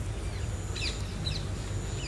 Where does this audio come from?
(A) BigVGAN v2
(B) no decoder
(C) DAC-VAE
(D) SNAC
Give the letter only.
B